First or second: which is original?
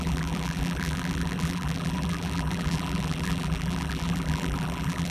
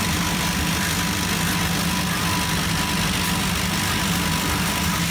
second